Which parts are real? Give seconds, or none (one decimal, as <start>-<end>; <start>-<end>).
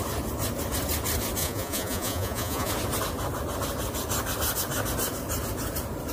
0.0-1.4; 2.7-6.1